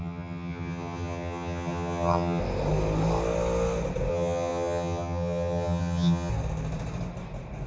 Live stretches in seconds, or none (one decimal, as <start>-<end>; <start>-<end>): 2.4-4.1; 6.3-7.7